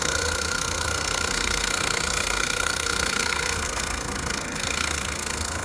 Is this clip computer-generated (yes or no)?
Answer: yes